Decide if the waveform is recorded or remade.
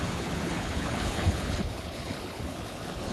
remade